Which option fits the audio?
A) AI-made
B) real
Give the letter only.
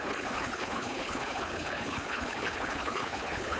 A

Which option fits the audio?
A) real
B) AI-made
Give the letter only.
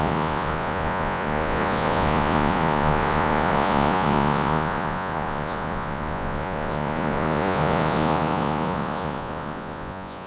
B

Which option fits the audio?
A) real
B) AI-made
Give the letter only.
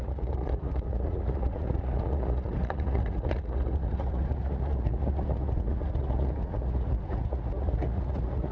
B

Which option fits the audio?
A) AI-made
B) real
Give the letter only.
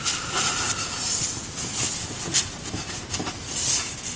B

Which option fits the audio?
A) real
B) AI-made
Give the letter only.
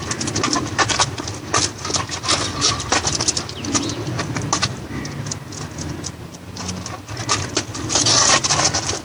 A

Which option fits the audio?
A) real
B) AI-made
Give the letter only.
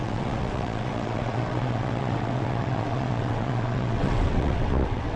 B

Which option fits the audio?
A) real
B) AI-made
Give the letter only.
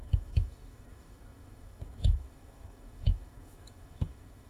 B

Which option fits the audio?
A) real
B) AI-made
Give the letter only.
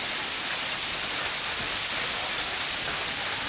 A